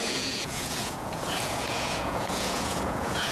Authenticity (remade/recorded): remade